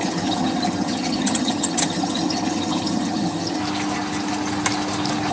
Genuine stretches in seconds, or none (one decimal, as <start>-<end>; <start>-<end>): 3.6-5.3